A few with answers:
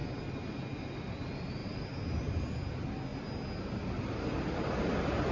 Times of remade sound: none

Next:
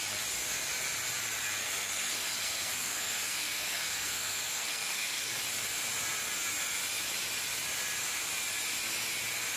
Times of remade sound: 1.6-5.4 (codec, SNAC)

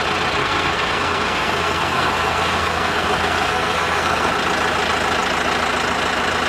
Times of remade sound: 0.4-4.3 (codec, SNAC)

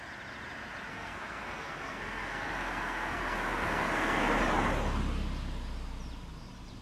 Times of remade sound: 0.9-4.4 (codec, SNAC)

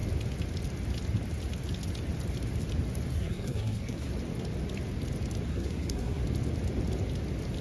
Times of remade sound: 3.1-4.1 (codec, SNAC); 5.5-6.2

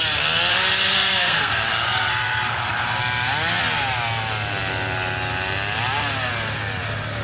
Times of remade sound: 0.5-3.0 (codec, SNAC)

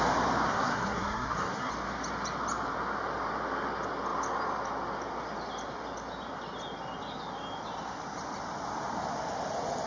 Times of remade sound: 0.5-1.7 (codec, SNAC)